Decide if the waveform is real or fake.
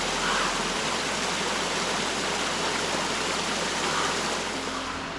real